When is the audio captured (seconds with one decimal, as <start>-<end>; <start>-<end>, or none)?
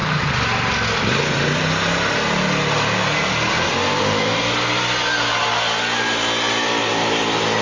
0.0-7.6